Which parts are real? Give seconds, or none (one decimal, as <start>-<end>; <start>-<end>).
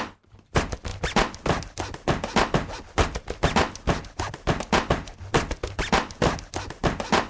0.0-7.3